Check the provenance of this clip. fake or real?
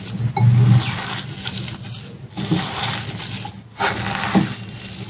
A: real